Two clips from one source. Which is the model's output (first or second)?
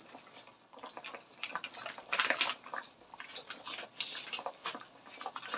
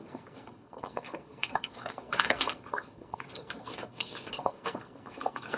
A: second